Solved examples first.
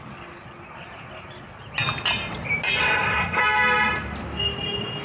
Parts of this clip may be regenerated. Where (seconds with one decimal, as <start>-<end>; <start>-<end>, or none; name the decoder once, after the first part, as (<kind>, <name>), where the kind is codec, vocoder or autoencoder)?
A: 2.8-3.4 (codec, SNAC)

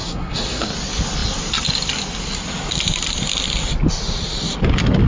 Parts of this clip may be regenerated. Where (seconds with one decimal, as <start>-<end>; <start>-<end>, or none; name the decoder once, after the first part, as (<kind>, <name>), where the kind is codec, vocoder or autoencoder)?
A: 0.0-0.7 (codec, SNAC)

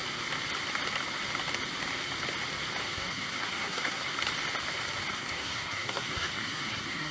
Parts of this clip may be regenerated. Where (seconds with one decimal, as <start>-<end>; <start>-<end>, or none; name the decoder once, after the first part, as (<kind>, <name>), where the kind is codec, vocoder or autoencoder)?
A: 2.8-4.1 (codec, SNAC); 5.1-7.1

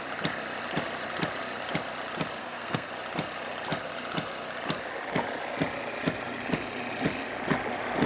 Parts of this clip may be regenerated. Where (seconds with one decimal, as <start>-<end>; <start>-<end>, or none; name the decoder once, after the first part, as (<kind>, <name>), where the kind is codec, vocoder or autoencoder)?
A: 2.4-2.9 (codec, SNAC)

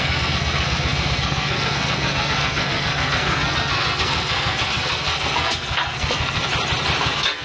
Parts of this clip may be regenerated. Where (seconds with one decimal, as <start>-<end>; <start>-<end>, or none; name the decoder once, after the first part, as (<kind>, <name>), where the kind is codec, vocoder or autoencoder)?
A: 0.0-6.5 (codec, SNAC); 7.0-7.4